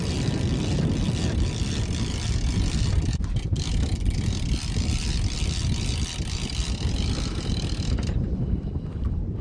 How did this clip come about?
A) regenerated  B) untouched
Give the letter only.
B